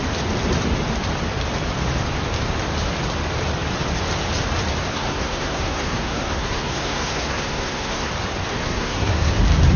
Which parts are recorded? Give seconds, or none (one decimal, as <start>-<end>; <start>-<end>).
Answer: 0.0-4.9; 8.1-8.5; 9.3-9.8